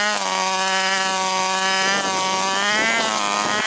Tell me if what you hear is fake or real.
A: real